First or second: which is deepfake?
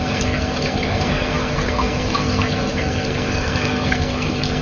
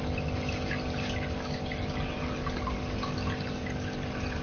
first